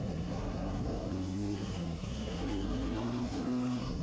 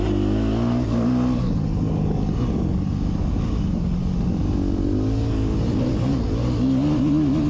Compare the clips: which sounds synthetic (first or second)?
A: first